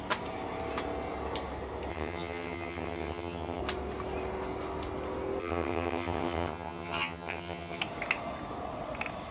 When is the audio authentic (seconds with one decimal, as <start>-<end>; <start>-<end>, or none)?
0.0-1.9; 3.6-5.4; 7.8-9.3